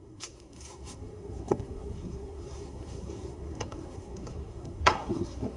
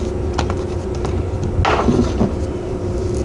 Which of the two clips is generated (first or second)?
first